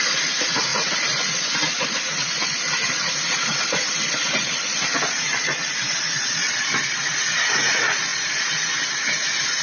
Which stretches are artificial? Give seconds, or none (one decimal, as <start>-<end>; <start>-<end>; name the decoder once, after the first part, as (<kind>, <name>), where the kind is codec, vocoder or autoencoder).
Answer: 0.0-9.6 (vocoder, Vocos)